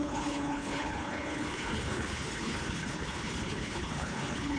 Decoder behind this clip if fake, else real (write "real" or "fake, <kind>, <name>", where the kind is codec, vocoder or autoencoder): fake, codec, HILCodec